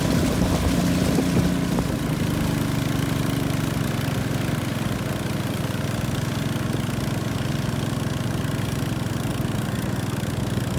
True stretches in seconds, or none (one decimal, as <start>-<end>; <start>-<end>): 0.0-10.8

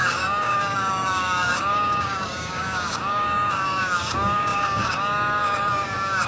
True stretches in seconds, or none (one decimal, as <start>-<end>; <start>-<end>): none